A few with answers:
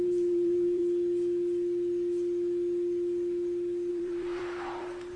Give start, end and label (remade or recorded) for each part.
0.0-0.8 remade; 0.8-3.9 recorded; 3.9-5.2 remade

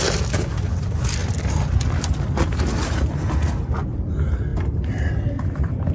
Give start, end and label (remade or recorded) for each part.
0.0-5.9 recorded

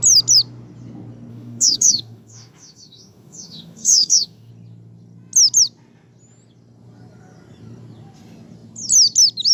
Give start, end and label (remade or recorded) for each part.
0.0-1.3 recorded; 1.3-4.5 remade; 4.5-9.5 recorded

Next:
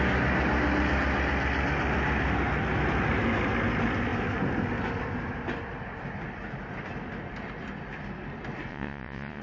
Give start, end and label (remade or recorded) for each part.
0.0-8.7 recorded; 8.7-9.4 remade

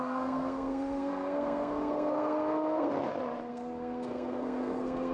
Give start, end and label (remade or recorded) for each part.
0.0-2.9 remade; 2.9-3.5 recorded; 3.5-5.1 remade

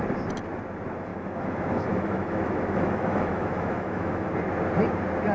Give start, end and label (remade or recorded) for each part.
0.0-1.1 recorded; 1.1-4.3 remade; 4.3-5.3 recorded